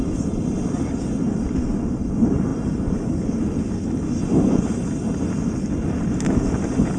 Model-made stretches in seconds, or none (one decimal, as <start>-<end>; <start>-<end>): none

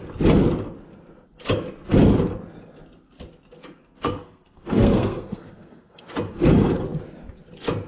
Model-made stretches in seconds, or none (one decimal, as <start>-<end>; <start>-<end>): 3.8-6.1

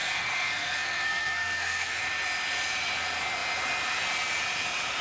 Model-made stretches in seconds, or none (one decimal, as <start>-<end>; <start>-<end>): 0.0-2.0